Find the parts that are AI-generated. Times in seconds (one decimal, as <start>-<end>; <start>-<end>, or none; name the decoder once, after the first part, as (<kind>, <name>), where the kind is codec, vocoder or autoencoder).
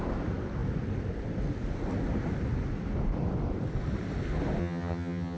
4.6-5.4 (vocoder, HiFi-GAN)